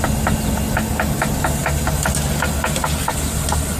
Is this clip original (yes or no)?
yes